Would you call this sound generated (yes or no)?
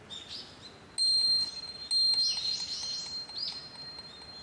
no